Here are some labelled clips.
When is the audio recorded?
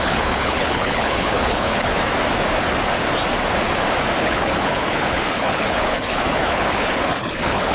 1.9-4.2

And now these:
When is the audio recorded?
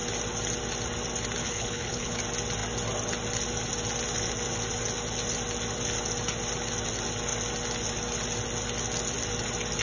0.0-1.4; 2.2-9.8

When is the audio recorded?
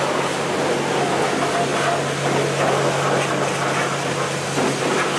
0.0-5.2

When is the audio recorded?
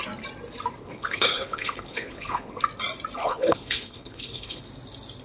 0.0-0.8; 2.6-3.2; 4.6-5.2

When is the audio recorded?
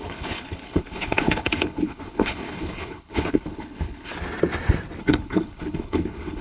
4.1-5.0